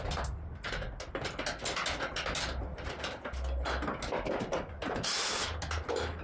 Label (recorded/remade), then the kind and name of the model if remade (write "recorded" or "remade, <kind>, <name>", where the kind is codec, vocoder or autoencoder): recorded